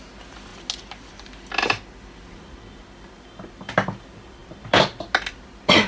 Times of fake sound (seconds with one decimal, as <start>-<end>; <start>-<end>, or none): none